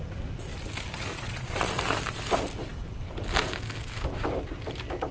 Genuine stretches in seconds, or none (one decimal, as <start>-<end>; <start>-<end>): 0.0-1.1; 1.8-5.1